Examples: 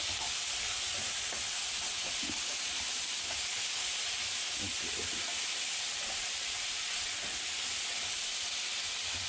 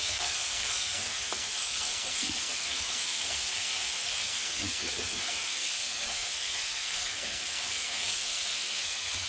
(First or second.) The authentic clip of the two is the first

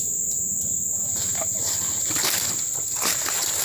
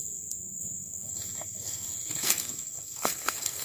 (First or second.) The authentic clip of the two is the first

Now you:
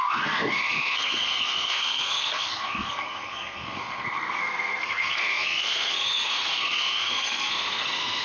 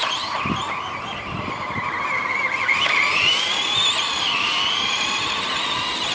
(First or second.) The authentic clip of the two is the second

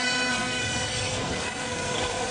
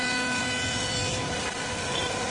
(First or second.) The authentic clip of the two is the second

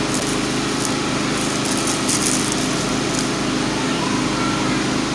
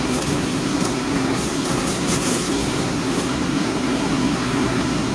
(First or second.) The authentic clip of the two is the first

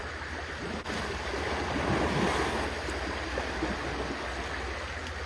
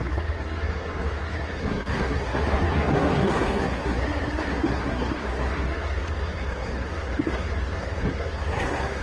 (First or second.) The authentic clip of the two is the first